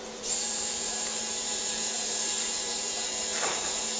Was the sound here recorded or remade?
remade